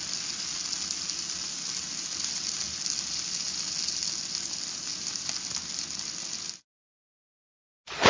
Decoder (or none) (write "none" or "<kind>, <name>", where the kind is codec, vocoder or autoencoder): none